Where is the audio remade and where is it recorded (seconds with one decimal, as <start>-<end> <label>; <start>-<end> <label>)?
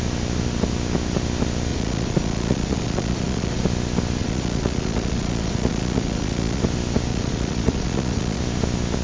0.0-1.7 recorded; 1.7-3.6 remade; 3.6-4.2 recorded; 4.2-6.6 remade; 6.6-7.1 recorded; 7.1-8.4 remade; 8.4-9.0 recorded